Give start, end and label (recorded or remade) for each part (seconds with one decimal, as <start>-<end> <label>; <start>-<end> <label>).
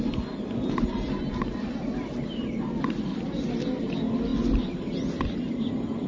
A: 0.0-6.1 recorded